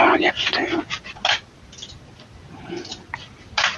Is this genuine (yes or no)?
yes